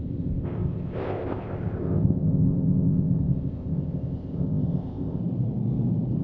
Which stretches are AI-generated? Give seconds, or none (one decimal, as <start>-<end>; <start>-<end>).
0.0-5.2